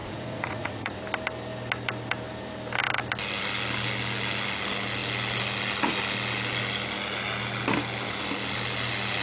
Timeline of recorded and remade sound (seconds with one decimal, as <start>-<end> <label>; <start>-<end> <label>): 0.0-1.0 remade; 1.0-9.2 recorded